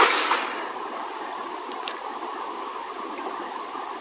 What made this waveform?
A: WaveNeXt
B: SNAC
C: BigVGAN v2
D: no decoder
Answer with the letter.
D